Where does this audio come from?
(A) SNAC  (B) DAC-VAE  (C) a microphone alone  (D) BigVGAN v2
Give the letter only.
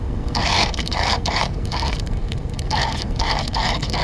A